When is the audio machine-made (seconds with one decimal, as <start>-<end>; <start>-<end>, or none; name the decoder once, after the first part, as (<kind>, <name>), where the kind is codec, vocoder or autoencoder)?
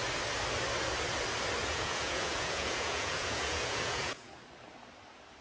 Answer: 1.6-4.3 (vocoder, Vocos)